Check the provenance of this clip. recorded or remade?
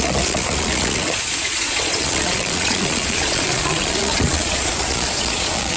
remade